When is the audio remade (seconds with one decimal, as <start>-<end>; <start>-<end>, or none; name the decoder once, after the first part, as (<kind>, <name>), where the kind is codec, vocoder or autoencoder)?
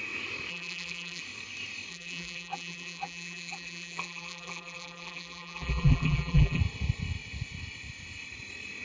0.5-1.2 (vocoder, BigVGAN v2); 1.9-6.6